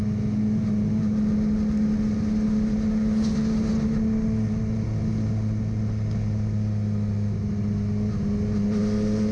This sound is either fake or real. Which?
real